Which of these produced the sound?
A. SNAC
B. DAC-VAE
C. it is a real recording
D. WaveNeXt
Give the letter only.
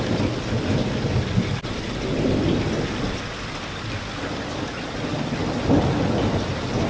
C